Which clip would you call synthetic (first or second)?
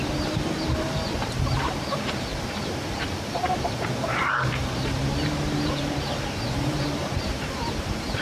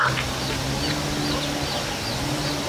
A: first